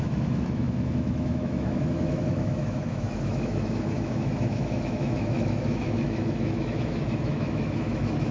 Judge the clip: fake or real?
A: fake